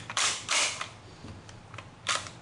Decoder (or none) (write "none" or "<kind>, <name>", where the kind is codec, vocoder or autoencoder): vocoder, BigVGAN v2